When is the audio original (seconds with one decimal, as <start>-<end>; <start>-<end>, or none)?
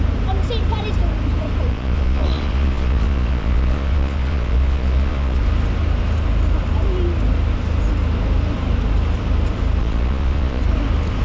0.0-1.7; 5.4-9.8; 10.6-11.2